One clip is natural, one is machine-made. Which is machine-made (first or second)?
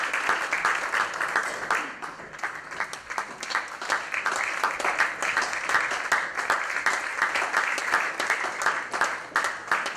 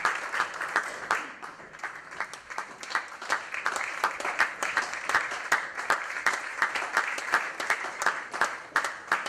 second